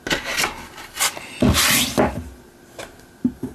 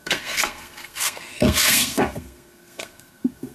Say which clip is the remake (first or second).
second